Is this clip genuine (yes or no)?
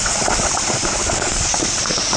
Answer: no